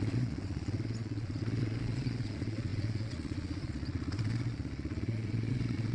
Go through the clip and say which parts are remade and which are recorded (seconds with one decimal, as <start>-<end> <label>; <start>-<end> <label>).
0.0-5.9 remade